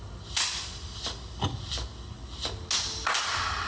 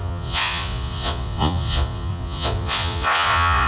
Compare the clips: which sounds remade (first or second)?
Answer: second